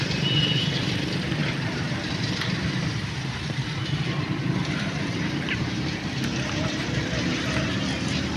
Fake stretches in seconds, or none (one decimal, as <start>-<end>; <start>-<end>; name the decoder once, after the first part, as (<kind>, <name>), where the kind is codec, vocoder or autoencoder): 0.0-8.4 (vocoder, BigVGAN v2)